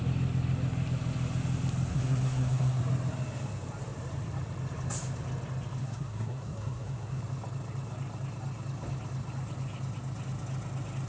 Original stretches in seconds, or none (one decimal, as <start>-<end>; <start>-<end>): 0.0-1.9; 2.8-5.8; 7.2-11.1